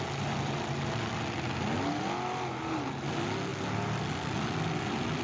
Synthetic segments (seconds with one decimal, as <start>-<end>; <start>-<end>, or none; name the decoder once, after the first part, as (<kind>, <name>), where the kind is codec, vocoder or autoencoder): none